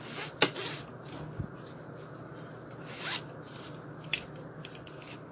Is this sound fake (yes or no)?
no